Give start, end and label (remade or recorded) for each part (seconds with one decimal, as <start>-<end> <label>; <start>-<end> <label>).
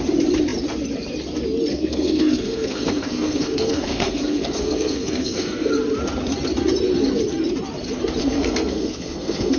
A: 0.0-1.7 recorded; 1.7-5.7 remade; 5.7-8.2 recorded; 8.2-9.6 remade